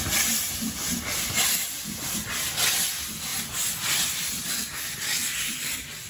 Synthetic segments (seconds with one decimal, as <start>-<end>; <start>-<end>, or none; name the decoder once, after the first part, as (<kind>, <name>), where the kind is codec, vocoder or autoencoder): none